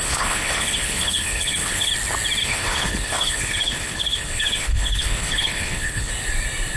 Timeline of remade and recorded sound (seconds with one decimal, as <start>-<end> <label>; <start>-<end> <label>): 0.0-1.9 remade; 1.9-2.4 recorded; 2.4-6.1 remade; 6.1-6.8 recorded